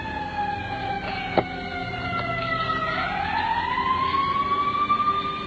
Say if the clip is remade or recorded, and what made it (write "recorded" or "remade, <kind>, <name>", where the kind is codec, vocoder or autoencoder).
recorded